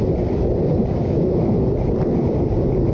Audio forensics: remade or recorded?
recorded